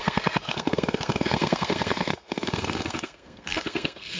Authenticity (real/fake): fake